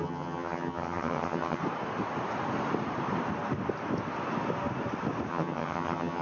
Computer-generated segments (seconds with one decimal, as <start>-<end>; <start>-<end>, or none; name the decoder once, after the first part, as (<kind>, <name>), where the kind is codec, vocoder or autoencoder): 0.0-1.6 (vocoder, HiFi-GAN); 5.3-6.2